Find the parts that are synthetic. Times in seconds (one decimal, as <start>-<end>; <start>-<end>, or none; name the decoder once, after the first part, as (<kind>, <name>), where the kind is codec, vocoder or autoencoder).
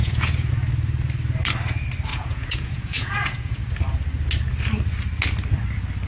0.0-0.5 (vocoder, Vocos); 2.1-3.6